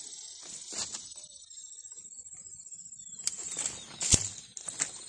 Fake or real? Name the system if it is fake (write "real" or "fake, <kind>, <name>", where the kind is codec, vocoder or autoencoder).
real